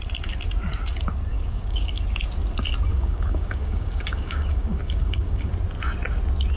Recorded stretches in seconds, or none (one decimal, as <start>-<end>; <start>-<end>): 0.0-1.3; 2.0-2.9; 5.5-6.6